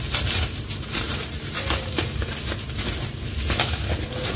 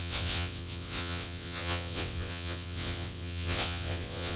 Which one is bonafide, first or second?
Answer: first